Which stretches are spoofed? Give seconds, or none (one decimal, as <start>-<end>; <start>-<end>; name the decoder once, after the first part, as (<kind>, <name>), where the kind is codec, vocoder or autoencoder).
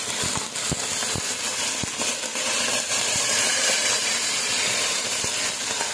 2.3-5.2 (vocoder, BigVGAN v2)